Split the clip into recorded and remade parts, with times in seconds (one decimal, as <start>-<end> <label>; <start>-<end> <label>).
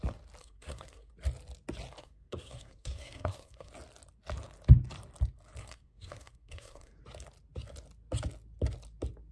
0.0-0.4 recorded; 0.4-1.1 remade; 1.1-2.0 recorded; 2.0-3.7 remade; 3.7-5.6 recorded; 5.6-7.0 remade; 7.0-9.3 recorded